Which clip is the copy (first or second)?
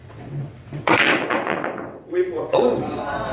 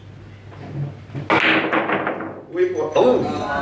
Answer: first